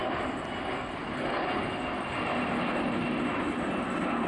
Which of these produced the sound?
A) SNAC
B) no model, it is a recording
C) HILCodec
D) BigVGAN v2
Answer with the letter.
B